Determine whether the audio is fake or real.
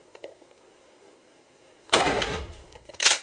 fake